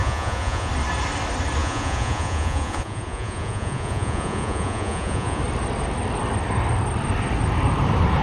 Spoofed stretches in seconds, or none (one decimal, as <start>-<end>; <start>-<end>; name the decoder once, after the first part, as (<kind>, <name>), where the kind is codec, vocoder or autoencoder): 0.0-0.7 (vocoder, Vocos); 1.6-5.4